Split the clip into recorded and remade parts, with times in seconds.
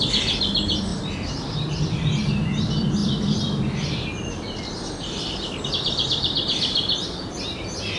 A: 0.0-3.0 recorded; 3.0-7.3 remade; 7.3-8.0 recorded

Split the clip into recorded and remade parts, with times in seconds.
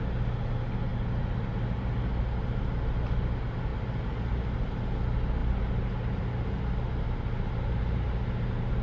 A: 0.0-8.8 recorded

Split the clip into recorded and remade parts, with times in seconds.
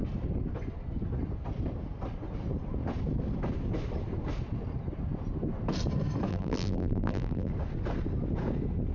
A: 0.0-6.3 recorded; 6.3-7.5 remade; 7.5-8.9 recorded